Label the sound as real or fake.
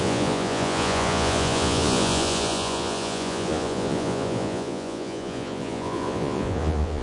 fake